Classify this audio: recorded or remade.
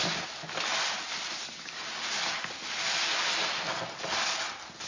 recorded